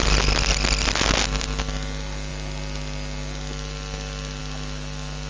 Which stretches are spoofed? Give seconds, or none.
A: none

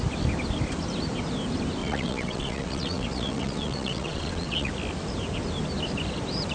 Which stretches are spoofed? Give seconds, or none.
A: 1.8-4.7

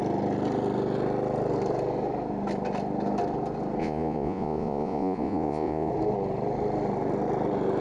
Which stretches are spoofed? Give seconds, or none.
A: 3.8-5.9

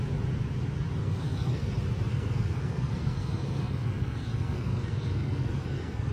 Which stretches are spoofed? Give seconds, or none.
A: 1.0-1.7; 2.1-6.1

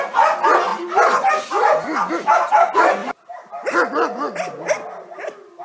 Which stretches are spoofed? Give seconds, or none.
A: none

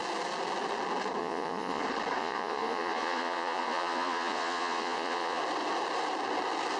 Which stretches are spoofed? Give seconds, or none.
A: 1.2-1.8; 2.2-5.4

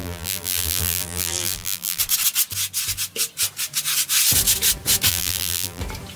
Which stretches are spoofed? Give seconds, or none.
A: 0.0-2.0; 5.1-5.8